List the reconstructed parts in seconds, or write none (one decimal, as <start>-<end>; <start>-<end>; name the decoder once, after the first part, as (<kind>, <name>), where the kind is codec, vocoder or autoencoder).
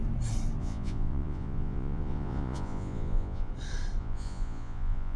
0.6-3.5 (vocoder, Vocos); 4.0-5.2